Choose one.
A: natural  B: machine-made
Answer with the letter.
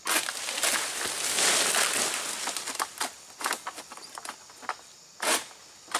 A